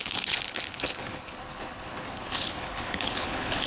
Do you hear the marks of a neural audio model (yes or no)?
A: yes